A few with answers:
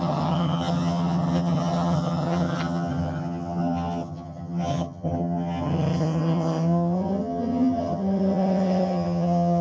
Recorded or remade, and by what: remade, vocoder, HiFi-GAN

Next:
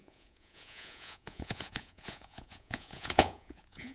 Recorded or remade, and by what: remade, vocoder, Vocos